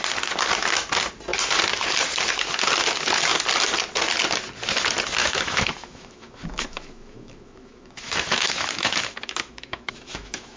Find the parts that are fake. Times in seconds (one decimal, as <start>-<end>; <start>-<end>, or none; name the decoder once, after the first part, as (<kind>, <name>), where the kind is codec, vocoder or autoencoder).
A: 5.2-10.6 (autoencoder, DAC-VAE)